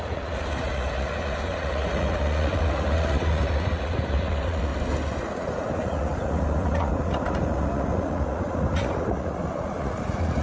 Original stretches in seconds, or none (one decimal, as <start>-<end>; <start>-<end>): 4.7-5.2